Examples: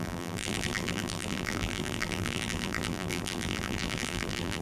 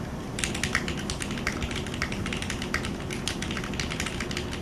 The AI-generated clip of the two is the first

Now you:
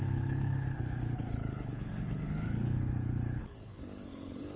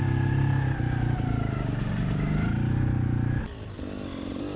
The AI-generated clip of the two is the first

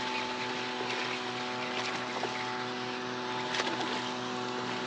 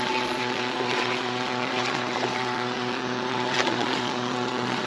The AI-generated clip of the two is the second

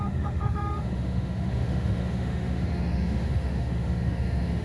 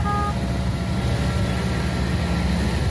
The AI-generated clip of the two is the first